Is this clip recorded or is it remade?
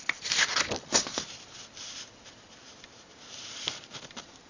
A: remade